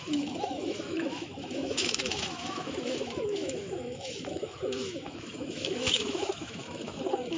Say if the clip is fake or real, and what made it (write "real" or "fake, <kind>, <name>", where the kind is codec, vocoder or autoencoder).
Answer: fake, autoencoder, DAC-VAE